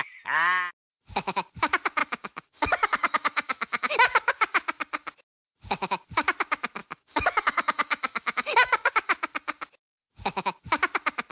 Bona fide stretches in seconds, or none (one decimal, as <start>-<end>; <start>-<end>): 0.0-2.0; 3.9-6.8; 8.9-11.3